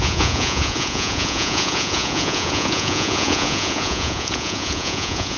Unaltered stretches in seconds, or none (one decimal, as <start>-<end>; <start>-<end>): none